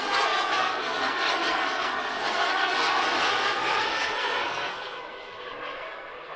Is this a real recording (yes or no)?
no